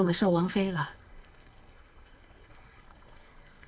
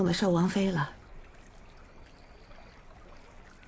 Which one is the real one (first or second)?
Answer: second